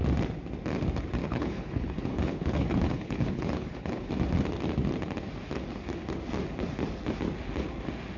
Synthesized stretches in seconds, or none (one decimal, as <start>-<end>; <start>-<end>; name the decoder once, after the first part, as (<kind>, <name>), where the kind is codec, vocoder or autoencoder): 1.2-4.1 (codec, HILCodec)

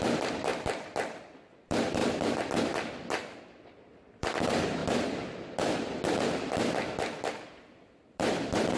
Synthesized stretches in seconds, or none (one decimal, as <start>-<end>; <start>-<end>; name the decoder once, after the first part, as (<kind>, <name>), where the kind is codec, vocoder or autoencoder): 0.0-4.8 (vocoder, BigVGAN v2); 7.3-8.8